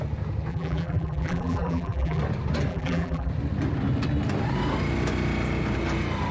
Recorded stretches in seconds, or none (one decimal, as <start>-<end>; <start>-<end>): 0.0-0.5; 2.2-2.7; 3.3-6.3